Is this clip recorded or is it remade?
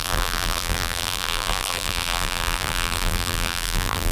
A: remade